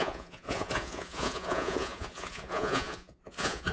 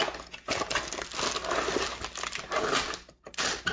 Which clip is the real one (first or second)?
second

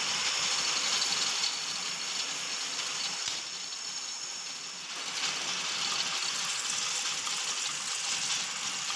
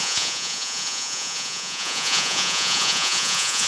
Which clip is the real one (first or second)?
first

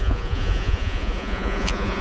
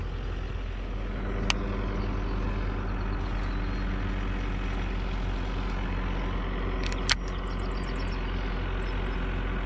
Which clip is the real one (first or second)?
second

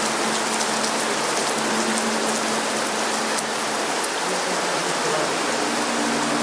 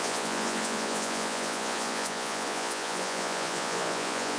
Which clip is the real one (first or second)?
first